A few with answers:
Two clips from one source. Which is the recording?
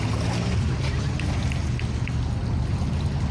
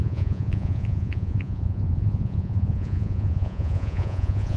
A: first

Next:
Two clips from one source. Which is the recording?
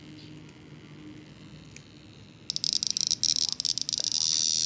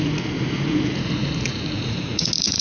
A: first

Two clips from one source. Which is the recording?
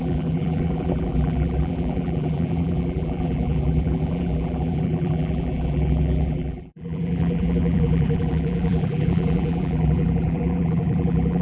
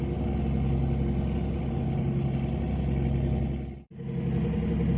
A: second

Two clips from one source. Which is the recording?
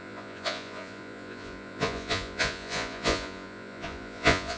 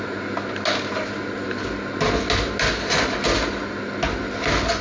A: second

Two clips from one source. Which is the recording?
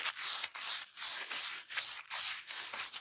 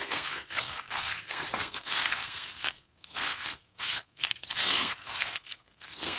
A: first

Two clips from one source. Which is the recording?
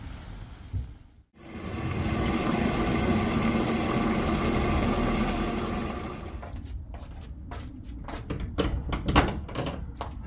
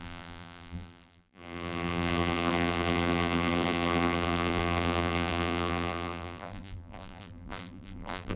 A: first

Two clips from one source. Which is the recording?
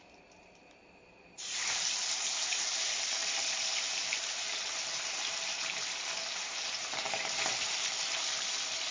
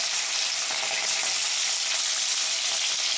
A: second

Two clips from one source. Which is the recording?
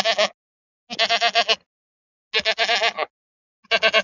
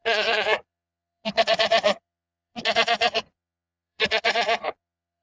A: first